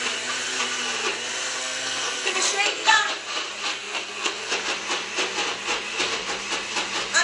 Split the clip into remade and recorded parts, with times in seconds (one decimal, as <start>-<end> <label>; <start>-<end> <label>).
0.0-1.6 recorded; 1.6-3.1 remade; 3.1-3.7 recorded; 3.7-4.5 remade; 4.5-7.2 recorded